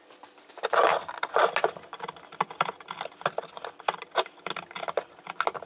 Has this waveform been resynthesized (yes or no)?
no